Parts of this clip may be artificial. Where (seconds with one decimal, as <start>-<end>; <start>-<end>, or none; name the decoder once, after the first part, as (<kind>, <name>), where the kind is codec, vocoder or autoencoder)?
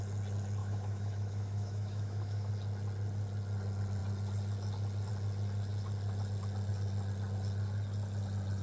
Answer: 0.6-2.5 (autoencoder, DAC-VAE)